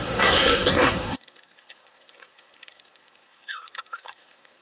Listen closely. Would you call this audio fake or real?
fake